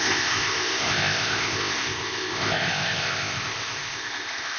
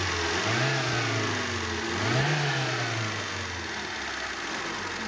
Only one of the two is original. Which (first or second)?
second